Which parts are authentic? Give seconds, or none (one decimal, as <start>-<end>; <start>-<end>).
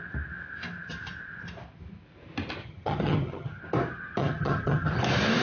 0.0-2.6; 3.6-4.2; 4.9-5.4